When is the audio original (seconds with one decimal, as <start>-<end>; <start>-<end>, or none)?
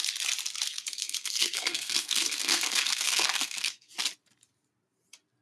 0.0-0.7; 3.9-5.4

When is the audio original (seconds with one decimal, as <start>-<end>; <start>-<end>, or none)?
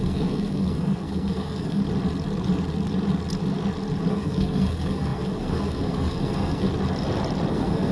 1.8-4.1; 6.7-7.5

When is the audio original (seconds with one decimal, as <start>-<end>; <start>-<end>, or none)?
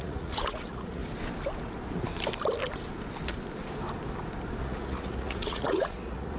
1.0-4.6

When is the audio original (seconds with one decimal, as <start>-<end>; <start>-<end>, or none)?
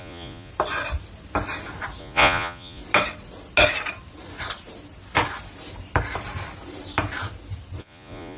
0.5-2.0; 2.8-7.8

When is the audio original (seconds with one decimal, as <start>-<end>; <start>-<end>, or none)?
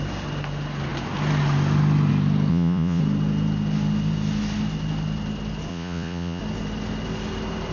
0.0-2.5; 3.0-5.7; 6.4-7.7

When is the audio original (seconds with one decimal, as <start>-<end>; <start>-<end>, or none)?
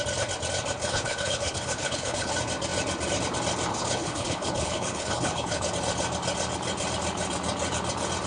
0.0-0.8; 2.3-3.7; 5.7-8.3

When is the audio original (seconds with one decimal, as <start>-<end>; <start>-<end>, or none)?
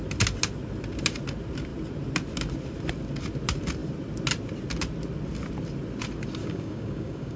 0.0-6.4